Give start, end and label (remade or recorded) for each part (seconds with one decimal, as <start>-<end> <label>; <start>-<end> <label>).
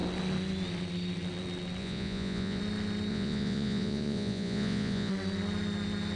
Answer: 0.0-1.8 recorded; 1.8-2.6 remade; 2.6-3.1 recorded; 3.1-5.1 remade; 5.1-6.2 recorded